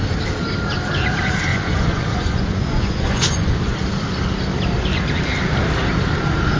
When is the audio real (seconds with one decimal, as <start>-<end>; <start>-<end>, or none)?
0.0-1.5; 3.5-6.6